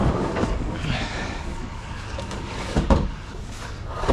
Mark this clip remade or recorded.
remade